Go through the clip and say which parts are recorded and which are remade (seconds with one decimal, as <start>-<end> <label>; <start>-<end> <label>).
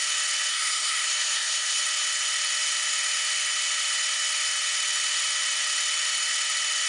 0.0-0.5 recorded; 0.5-1.8 remade; 1.8-6.9 recorded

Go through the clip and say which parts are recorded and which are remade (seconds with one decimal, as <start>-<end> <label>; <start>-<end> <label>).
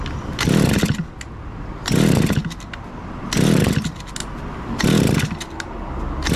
0.0-6.4 recorded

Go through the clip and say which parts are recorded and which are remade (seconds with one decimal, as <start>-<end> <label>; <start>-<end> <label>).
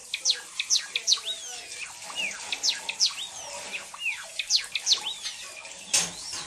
0.0-6.5 recorded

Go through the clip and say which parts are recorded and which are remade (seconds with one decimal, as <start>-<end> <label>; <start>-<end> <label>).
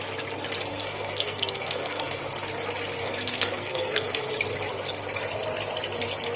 0.0-0.7 recorded; 0.7-2.2 remade; 2.2-3.0 recorded; 3.0-4.2 remade; 4.2-6.4 recorded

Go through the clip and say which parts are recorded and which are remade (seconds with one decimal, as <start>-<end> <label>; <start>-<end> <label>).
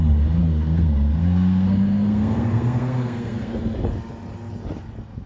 0.0-0.4 recorded; 0.4-3.6 remade; 3.6-5.3 recorded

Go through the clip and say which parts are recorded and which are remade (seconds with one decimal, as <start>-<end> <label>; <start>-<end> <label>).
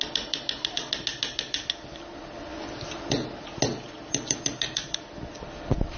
0.0-6.0 recorded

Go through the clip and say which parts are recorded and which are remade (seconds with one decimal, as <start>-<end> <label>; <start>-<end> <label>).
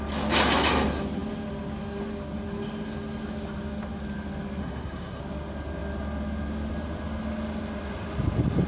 0.0-4.6 recorded; 4.6-5.2 remade; 5.2-8.7 recorded